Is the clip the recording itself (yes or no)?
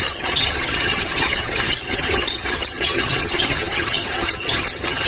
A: no